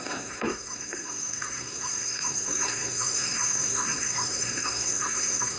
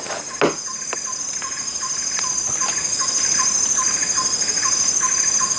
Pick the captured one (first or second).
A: second